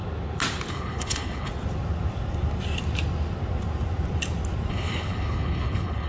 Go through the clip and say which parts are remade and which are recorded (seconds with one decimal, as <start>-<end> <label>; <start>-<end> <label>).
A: 0.0-0.7 recorded; 0.7-1.5 remade; 1.5-4.7 recorded; 4.7-6.1 remade